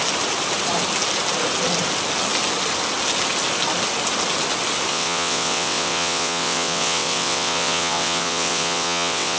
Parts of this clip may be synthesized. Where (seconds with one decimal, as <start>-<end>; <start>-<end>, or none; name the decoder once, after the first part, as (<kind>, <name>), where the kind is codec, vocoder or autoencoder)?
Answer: 4.9-9.4 (vocoder, WaveNeXt)